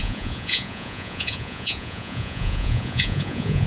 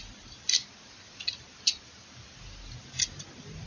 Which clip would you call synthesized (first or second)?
first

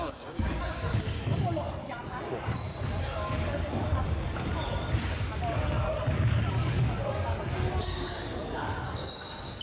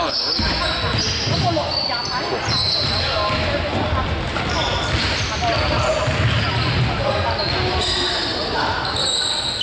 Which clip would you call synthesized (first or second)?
first